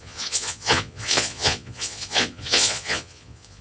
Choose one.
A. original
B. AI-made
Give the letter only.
B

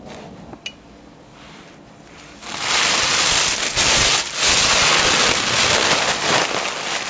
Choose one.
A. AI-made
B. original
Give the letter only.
B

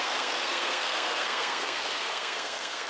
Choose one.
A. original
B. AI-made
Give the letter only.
B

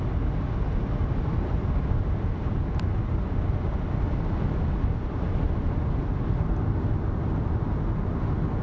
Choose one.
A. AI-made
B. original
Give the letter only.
B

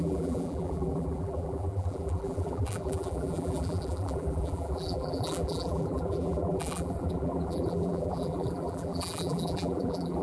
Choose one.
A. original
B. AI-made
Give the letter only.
B